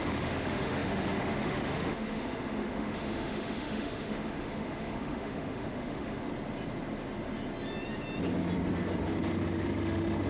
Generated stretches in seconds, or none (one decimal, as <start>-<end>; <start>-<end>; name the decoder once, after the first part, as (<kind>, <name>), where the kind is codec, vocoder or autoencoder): 0.0-6.3 (autoencoder, DAC-VAE); 9.2-10.3